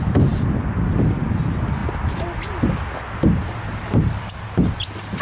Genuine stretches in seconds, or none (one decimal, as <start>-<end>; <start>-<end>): 0.0-5.2